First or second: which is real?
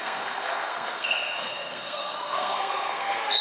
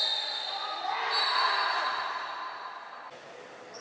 second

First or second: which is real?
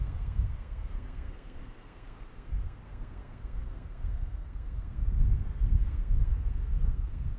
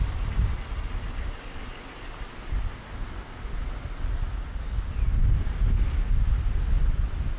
second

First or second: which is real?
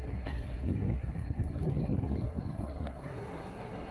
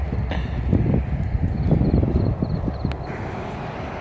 second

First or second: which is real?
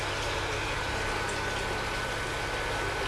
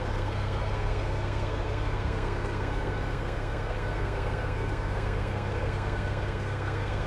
first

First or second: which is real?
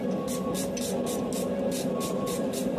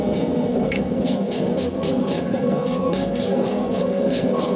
first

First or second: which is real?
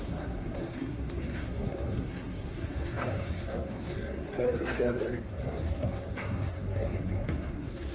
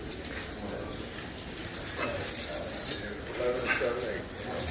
second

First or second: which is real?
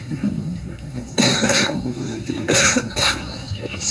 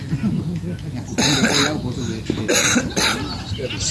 second